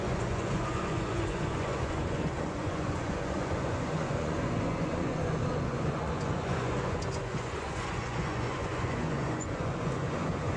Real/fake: fake